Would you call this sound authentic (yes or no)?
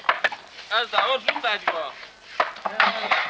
yes